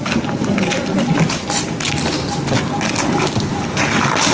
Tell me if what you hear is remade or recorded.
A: recorded